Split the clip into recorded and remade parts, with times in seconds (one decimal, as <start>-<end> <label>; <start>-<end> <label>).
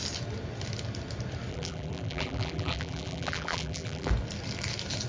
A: 0.0-1.5 recorded; 1.5-4.1 remade; 4.1-5.1 recorded